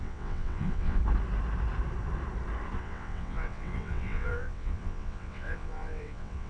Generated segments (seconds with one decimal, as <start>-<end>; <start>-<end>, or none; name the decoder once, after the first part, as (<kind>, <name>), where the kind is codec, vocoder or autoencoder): 0.0-1.0 (vocoder, WaveNeXt); 2.8-6.5